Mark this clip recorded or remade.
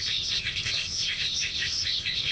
remade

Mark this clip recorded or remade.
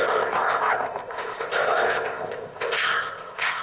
remade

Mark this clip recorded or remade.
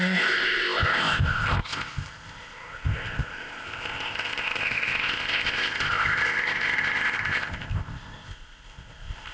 remade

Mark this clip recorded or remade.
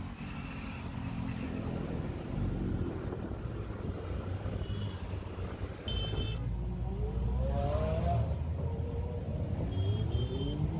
recorded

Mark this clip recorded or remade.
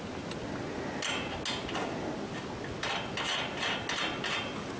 recorded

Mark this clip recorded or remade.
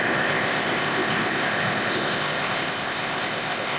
remade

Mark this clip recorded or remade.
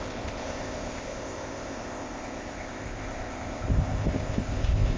remade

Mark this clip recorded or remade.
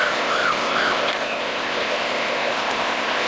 remade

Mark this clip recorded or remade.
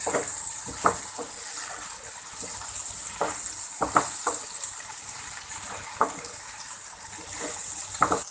recorded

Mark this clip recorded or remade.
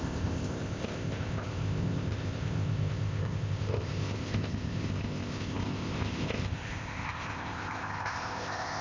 remade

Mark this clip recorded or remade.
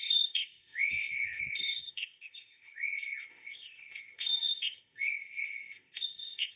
remade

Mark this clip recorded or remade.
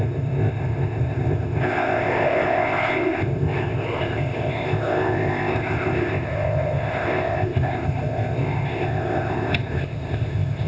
remade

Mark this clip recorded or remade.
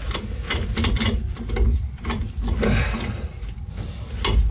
recorded